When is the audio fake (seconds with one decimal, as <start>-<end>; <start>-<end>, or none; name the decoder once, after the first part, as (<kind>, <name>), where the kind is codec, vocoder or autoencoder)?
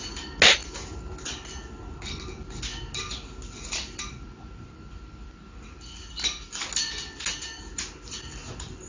none